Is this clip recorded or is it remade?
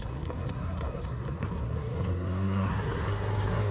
remade